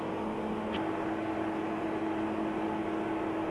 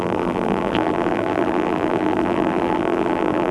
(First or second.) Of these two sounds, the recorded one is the first